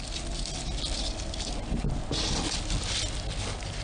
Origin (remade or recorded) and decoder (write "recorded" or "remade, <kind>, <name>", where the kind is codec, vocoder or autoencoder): recorded